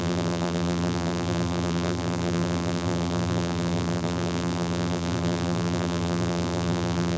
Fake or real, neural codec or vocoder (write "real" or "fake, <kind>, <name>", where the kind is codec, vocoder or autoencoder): fake, vocoder, BigVGAN v2